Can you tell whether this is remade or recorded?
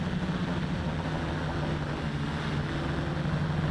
recorded